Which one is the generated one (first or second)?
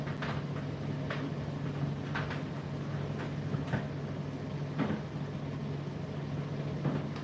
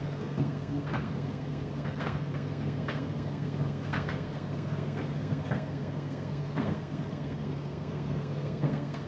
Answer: second